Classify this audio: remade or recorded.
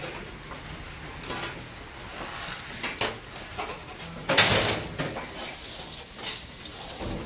recorded